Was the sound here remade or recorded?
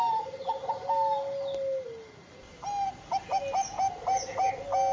recorded